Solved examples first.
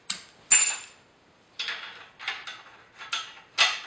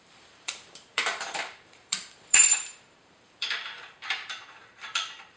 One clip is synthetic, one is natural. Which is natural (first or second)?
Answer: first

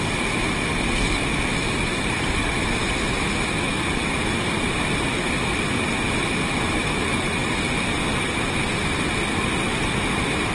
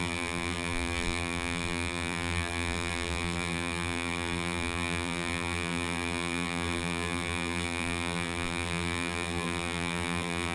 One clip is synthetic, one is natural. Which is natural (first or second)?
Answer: first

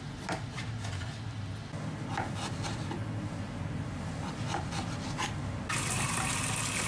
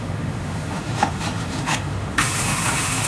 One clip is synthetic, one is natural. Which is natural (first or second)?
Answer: first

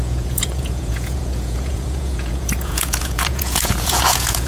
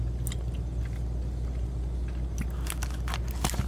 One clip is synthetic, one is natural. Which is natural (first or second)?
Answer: second